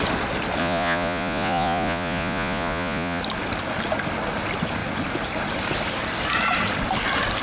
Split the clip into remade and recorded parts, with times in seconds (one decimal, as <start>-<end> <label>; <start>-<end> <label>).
0.0-0.6 recorded; 0.6-3.2 remade; 3.2-7.4 recorded